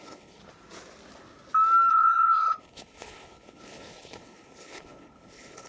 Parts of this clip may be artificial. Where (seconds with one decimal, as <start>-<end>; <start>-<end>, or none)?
0.0-0.4; 1.9-5.7